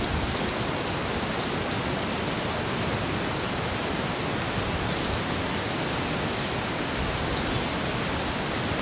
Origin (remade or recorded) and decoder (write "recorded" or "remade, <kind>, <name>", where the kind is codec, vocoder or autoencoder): recorded